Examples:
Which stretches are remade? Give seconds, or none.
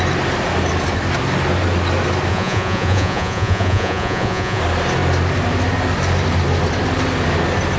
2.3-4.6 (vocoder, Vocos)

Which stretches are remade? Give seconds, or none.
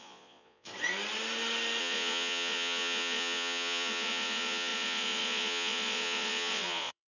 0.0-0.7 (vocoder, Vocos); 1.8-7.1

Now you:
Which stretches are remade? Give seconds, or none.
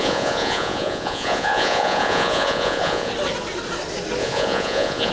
0.0-3.1 (vocoder, Vocos); 4.2-5.1